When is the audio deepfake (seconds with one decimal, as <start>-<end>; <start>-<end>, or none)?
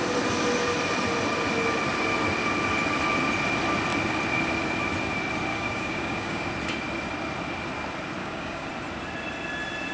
5.5-6.5; 8.2-8.7